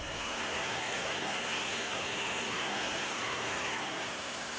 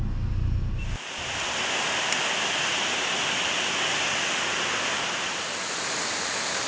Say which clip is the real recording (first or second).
second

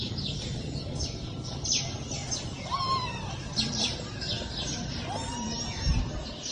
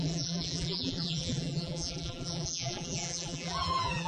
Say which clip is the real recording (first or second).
first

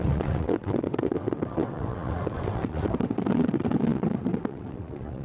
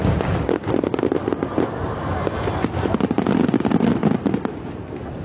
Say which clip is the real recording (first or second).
second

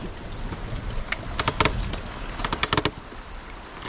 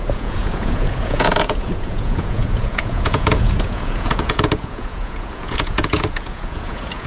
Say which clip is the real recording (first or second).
first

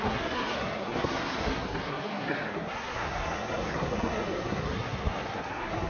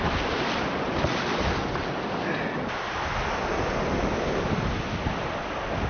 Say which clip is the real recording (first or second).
second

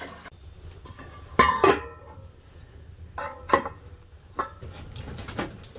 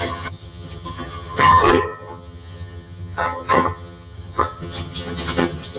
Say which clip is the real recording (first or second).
first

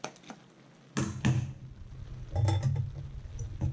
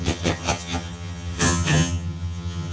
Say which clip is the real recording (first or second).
first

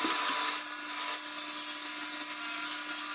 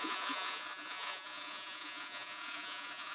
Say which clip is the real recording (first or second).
first